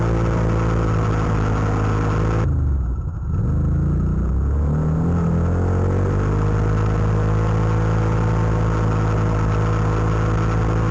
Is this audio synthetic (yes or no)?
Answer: no